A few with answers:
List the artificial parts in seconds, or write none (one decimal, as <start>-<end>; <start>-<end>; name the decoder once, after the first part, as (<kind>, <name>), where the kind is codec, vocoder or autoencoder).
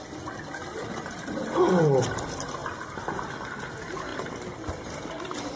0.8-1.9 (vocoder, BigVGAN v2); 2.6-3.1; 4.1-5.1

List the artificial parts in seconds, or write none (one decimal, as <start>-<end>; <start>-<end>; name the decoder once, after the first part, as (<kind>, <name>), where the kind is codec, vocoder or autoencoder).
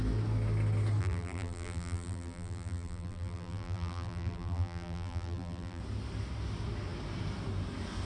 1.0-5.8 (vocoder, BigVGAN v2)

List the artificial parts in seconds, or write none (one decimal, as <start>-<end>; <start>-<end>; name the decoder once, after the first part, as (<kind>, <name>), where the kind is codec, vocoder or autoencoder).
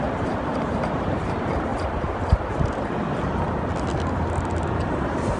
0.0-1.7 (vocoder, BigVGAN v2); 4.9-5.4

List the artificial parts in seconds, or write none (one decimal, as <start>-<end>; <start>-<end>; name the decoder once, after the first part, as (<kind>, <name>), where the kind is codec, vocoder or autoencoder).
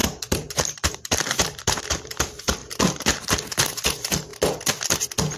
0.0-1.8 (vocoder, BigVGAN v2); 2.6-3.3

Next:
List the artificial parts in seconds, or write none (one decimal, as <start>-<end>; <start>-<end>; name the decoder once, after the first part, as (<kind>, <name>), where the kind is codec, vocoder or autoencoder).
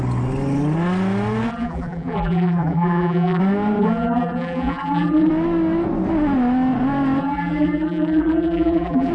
1.5-3.4 (vocoder, BigVGAN v2); 3.8-5.3; 7.2-9.1